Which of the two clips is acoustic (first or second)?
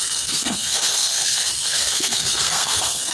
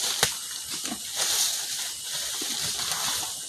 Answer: second